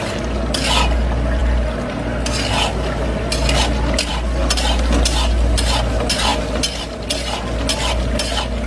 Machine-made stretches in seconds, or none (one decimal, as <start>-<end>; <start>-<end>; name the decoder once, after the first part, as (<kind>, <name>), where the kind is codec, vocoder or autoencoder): none